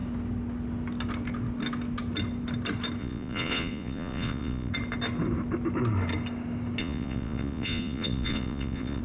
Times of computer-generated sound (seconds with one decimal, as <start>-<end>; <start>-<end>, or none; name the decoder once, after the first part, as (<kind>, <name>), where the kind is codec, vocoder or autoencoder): 3.0-4.7 (vocoder, Vocos); 6.8-9.0